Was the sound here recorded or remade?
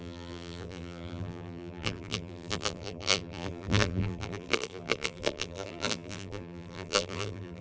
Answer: remade